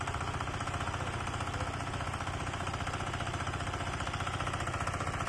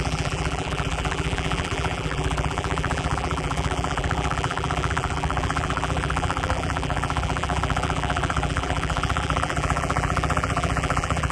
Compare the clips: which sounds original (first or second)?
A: first